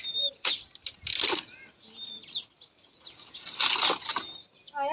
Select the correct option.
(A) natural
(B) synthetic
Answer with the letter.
A